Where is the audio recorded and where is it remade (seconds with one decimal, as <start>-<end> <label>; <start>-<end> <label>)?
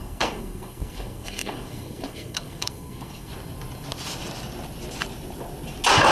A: 0.0-3.3 remade; 3.3-6.1 recorded